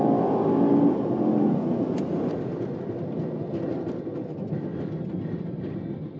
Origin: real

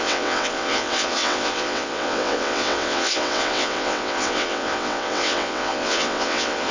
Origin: fake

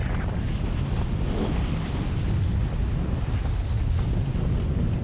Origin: real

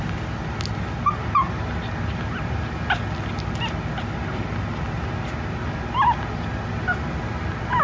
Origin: real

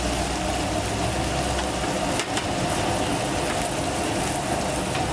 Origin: real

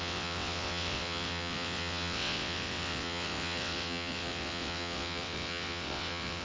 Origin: fake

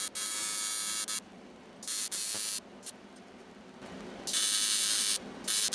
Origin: real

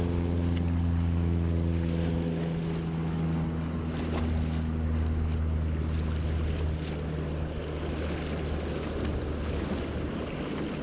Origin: real